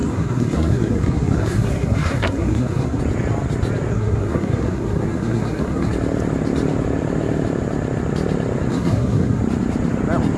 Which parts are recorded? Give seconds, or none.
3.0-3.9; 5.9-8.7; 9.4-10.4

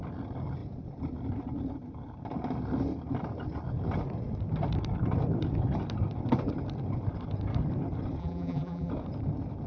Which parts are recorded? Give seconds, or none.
0.0-8.2; 8.9-9.7

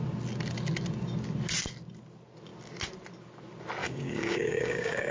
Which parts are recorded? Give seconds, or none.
0.0-3.8

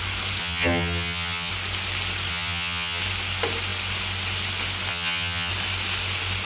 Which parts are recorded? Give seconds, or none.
0.0-0.4; 1.5-2.3; 3.0-4.9; 5.5-6.4

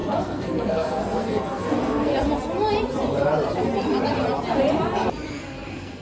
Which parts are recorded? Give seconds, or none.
2.1-5.3

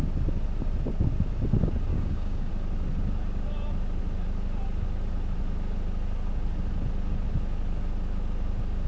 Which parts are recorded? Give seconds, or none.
0.0-1.9; 2.5-8.9

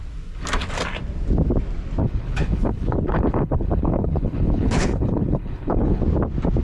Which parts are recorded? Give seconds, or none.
0.0-2.0; 6.0-6.6